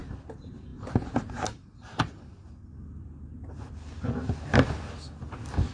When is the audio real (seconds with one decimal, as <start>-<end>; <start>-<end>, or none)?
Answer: 0.0-5.7